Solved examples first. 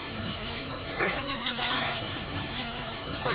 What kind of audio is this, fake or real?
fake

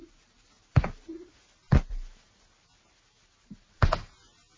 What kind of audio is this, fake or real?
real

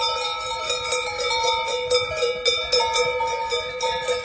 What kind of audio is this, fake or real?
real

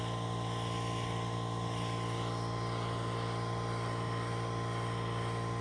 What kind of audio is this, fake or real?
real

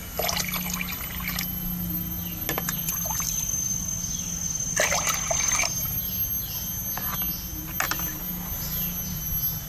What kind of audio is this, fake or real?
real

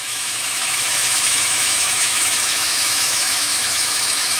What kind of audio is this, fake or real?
fake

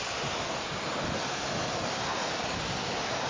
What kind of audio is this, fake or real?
real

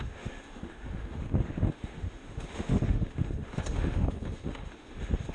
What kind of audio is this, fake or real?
fake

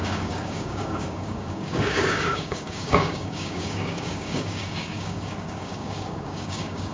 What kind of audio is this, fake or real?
fake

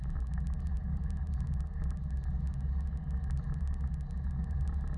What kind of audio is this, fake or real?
real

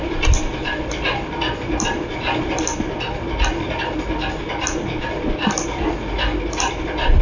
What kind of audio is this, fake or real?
real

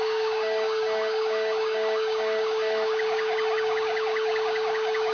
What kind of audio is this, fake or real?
fake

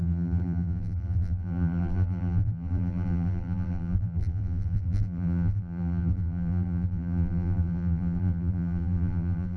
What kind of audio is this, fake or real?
fake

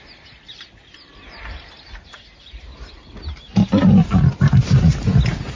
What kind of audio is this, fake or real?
real